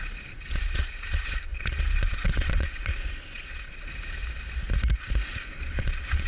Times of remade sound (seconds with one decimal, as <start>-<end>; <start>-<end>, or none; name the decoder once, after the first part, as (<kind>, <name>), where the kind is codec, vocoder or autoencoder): 0.0-4.2 (vocoder, Vocos); 5.5-6.3